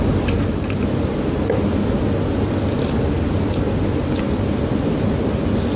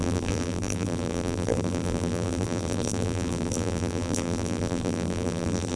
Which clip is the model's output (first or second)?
second